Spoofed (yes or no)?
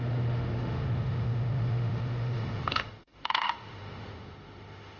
yes